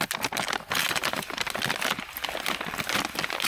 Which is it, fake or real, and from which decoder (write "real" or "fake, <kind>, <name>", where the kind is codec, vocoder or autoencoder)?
real